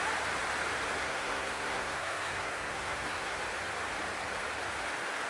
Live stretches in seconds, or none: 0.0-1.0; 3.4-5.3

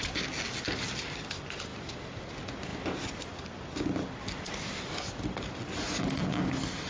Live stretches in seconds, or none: 0.0-6.9

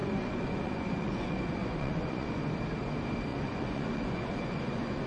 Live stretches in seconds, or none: 2.5-3.3